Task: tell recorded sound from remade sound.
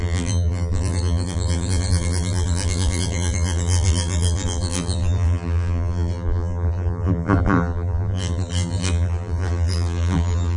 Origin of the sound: remade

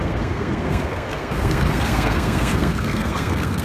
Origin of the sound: remade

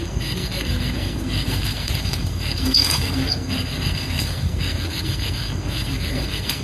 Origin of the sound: remade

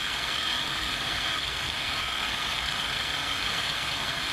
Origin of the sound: remade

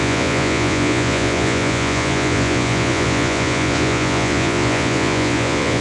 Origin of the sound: remade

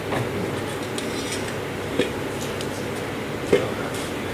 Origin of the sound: recorded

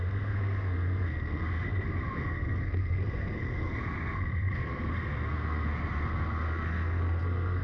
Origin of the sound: remade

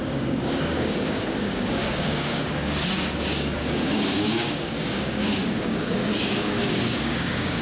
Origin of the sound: remade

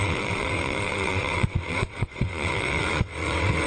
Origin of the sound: remade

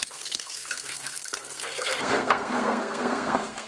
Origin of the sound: remade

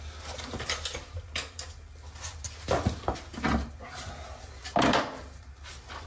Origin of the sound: recorded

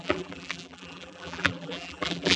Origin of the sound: remade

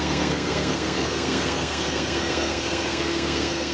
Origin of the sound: remade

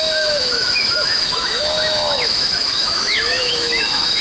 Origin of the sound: remade